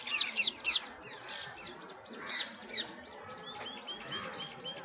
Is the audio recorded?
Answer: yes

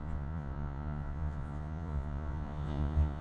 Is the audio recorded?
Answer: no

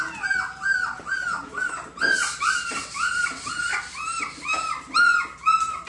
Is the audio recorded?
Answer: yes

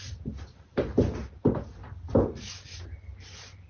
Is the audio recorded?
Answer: yes